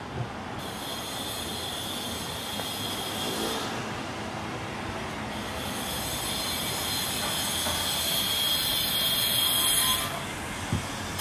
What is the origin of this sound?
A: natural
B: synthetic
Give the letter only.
A